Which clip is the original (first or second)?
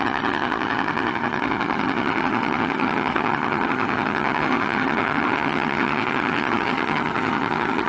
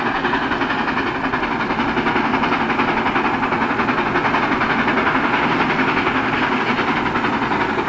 second